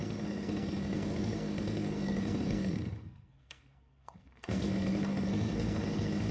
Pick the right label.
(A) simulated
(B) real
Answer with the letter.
A